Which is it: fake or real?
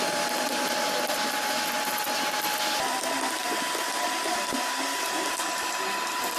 real